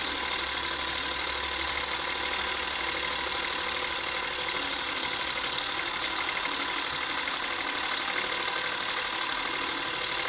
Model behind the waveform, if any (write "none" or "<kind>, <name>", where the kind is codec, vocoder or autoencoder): none